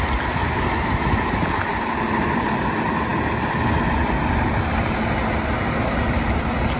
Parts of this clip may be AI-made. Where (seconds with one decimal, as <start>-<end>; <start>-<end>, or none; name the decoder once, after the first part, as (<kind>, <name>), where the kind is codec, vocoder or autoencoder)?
none